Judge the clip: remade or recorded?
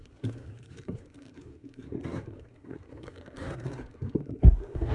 remade